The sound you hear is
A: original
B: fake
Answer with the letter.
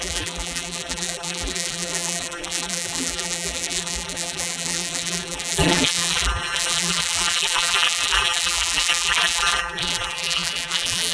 B